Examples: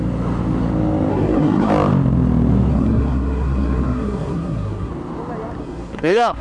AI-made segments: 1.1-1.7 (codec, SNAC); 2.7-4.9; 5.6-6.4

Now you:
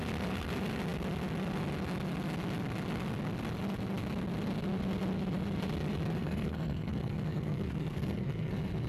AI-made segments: 6.2-8.5 (codec, SNAC)

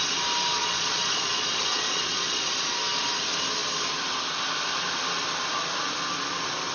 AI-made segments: 0.6-2.5 (vocoder, Vocos)